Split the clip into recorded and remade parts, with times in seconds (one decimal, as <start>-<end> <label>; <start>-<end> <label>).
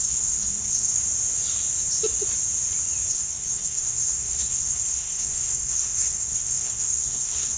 0.0-1.0 remade; 1.0-3.1 recorded; 3.1-7.6 remade